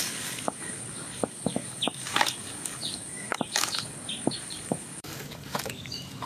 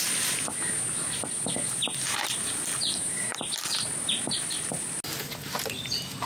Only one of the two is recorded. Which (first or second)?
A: second